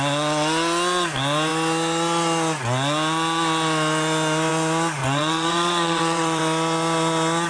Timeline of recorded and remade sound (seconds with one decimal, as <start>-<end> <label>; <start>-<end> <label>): 0.0-5.0 recorded; 5.0-6.4 remade; 6.4-7.5 recorded